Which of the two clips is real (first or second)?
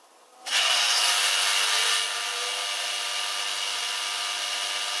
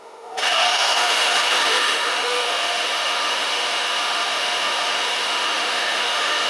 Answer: first